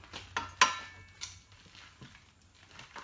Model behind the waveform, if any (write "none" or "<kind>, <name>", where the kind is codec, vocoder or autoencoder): none